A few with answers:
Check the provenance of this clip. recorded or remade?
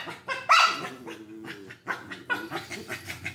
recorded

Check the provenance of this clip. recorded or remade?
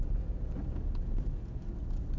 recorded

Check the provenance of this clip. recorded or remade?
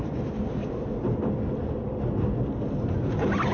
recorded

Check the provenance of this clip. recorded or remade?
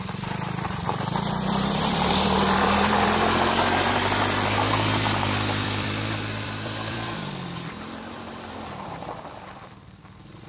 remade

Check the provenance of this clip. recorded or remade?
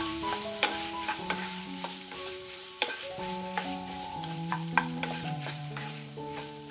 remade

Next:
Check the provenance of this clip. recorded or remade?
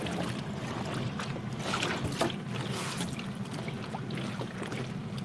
recorded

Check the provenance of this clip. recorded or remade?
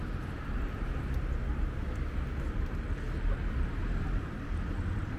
recorded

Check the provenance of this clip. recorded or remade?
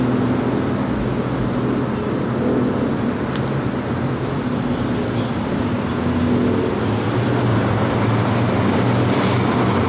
recorded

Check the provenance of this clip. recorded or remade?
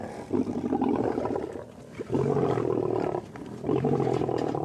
recorded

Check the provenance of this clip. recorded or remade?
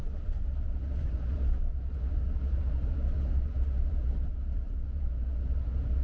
remade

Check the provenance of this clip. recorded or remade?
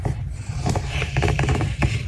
remade